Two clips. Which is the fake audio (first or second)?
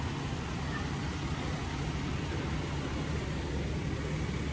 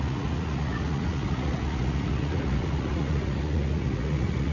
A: second